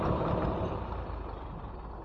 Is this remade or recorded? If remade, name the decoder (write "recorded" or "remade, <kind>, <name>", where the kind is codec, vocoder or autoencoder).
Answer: remade, vocoder, BigVGAN v2